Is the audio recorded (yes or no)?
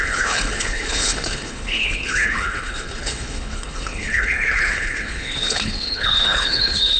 no